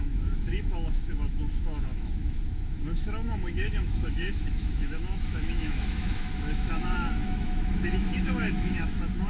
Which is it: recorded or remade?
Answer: remade